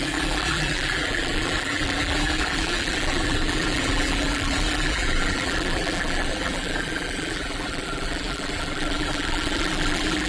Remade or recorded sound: remade